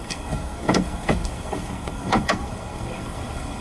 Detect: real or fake fake